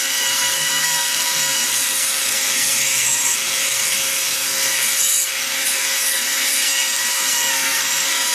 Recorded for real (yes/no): no